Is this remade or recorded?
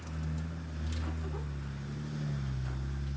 recorded